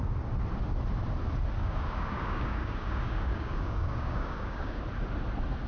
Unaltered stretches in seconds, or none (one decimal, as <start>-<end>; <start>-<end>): 0.0-1.6; 4.8-5.7